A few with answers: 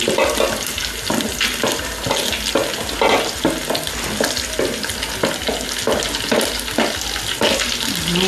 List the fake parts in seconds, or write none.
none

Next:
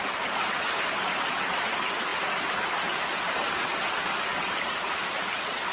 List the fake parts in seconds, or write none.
none

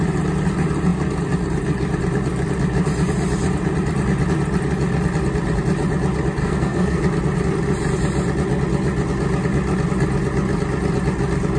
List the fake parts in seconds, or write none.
6.4-7.0 (codec, SNAC)

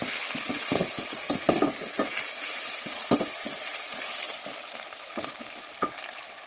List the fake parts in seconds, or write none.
none

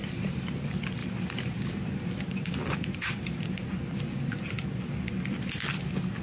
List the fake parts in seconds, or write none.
0.0-0.6 (vocoder, BigVGAN v2); 1.0-4.7